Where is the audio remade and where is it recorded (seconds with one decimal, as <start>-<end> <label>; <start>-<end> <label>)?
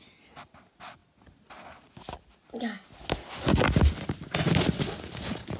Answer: 0.0-5.6 recorded